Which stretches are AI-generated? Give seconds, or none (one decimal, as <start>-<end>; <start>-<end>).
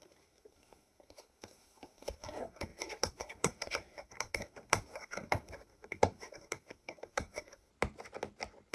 0.0-7.7